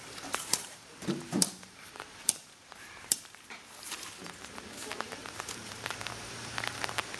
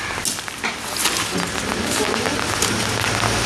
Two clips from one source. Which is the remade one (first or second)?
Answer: first